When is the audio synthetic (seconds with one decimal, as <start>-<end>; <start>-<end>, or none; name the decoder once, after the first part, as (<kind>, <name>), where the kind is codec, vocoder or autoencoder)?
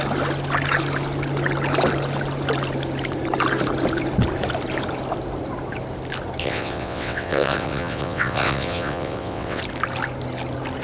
6.4-9.6 (vocoder, WaveNeXt)